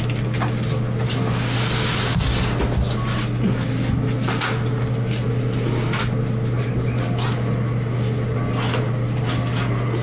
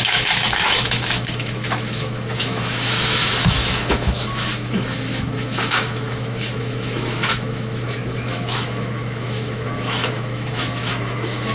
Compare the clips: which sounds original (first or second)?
first